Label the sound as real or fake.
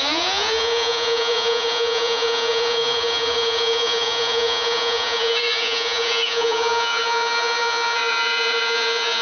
fake